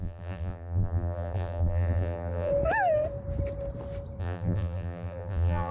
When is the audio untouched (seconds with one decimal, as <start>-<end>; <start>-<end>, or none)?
2.5-4.2